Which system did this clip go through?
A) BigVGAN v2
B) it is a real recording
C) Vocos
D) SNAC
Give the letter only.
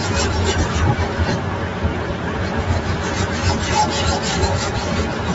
B